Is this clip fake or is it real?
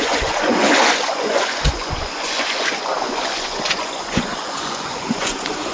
fake